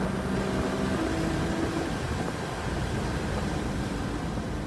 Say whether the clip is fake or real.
real